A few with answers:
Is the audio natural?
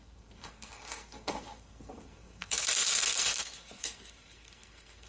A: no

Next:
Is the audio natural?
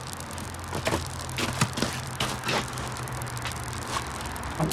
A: yes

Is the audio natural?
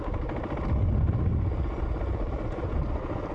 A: yes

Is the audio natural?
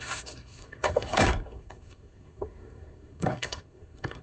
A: no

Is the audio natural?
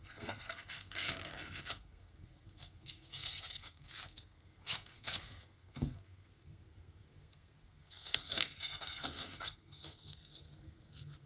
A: no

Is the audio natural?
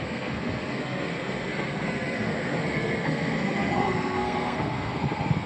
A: no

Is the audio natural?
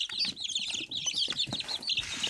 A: yes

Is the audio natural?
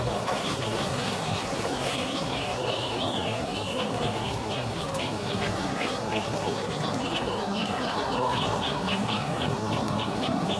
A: no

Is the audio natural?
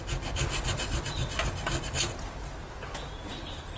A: yes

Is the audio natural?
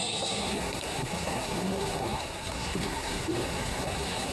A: no